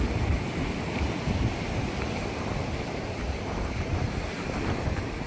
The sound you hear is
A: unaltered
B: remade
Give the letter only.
A